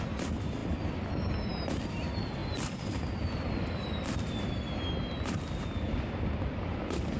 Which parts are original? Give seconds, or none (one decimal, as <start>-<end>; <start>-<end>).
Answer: 0.0-2.4; 4.7-7.2